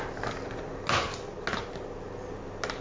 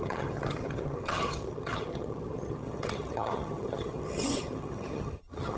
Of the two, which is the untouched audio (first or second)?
first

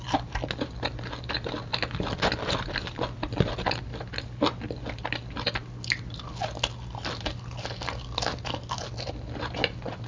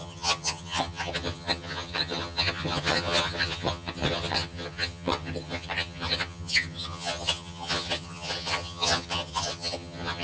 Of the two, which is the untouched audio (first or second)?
first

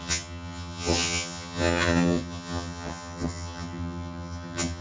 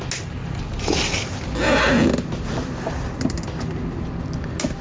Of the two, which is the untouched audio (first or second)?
second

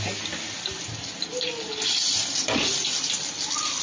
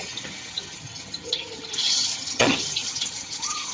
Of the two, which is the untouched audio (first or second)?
first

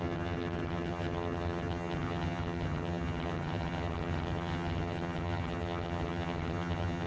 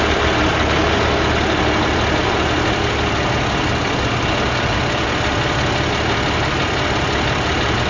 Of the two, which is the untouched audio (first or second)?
second